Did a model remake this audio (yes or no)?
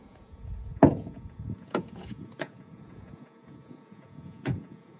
yes